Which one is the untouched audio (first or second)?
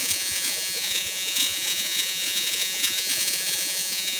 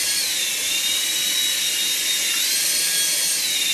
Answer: second